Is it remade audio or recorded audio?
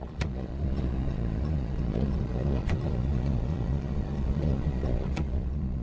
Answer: remade